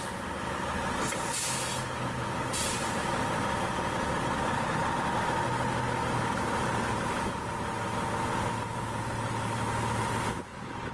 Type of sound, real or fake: real